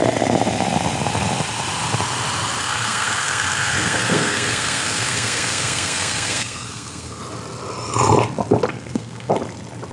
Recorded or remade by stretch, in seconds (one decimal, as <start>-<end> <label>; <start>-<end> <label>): 0.0-2.6 recorded; 2.6-7.2 remade; 7.2-8.7 recorded; 8.7-9.3 remade; 9.3-9.9 recorded